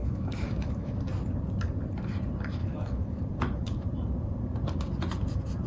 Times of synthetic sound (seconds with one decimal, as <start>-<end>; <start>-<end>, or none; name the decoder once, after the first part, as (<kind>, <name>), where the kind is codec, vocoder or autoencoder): 0.0-1.0 (autoencoder, DAC-VAE); 2.6-3.2